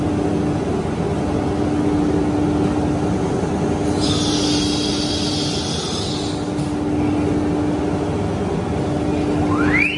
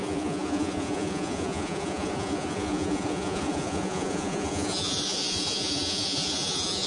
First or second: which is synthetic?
second